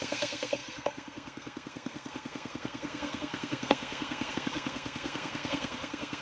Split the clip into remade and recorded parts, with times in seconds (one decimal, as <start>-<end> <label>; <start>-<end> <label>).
0.0-6.2 remade